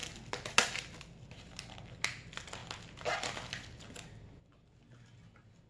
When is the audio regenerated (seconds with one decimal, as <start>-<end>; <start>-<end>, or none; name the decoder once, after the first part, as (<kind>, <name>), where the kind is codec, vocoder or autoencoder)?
none